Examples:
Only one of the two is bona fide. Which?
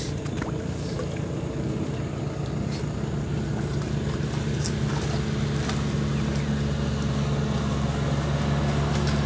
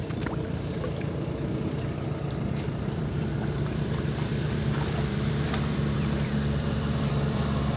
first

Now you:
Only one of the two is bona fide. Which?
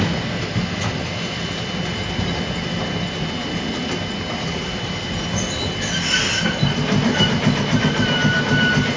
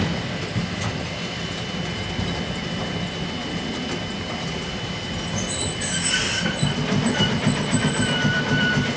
first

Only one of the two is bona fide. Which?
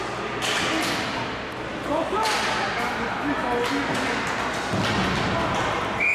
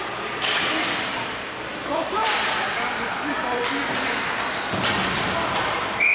first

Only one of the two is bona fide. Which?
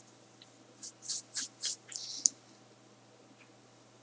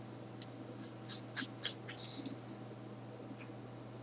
second